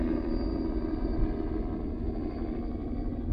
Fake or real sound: real